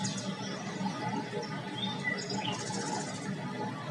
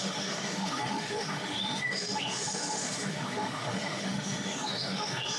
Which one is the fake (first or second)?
second